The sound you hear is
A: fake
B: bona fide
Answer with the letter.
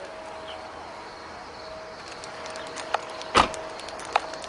B